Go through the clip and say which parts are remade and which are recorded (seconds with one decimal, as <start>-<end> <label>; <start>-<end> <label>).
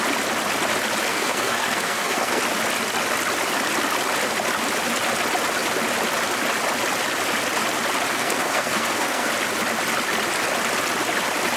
0.0-1.1 recorded; 1.1-2.4 remade; 2.4-8.1 recorded; 8.1-9.3 remade; 9.3-11.6 recorded